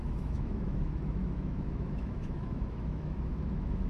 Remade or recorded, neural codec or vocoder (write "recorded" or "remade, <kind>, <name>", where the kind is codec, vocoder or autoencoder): remade, autoencoder, DAC-VAE